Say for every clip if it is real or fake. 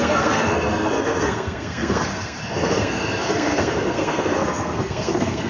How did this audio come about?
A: fake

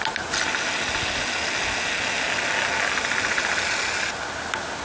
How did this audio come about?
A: real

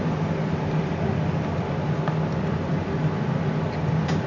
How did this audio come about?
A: real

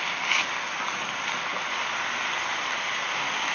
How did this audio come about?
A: real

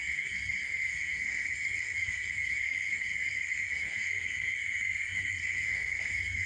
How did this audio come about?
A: fake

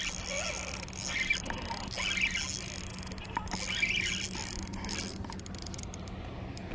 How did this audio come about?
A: real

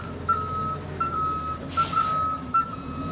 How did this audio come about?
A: real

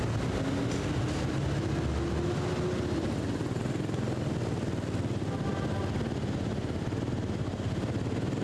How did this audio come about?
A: real